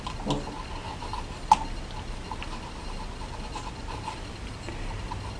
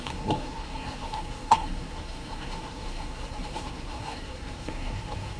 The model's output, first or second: second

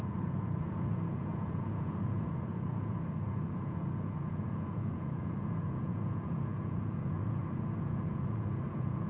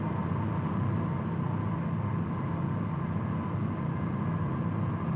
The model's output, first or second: first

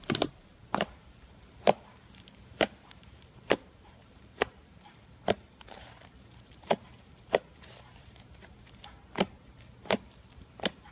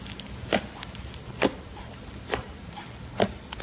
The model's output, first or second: first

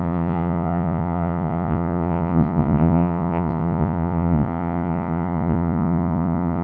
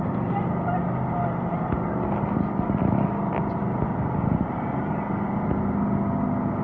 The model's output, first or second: first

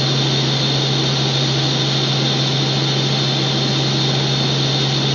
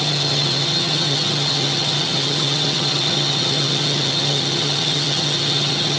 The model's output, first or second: second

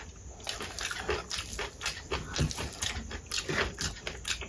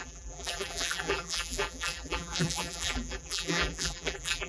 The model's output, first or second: second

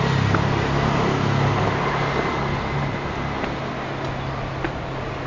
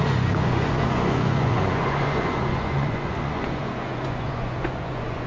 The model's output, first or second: second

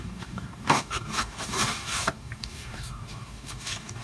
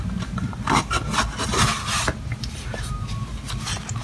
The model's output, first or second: first